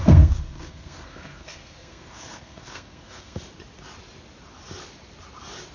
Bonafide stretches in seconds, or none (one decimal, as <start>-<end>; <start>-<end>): 3.4-5.7